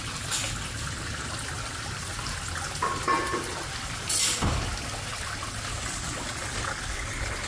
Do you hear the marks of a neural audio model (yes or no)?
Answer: no